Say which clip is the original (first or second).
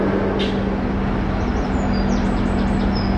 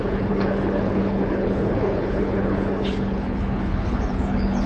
first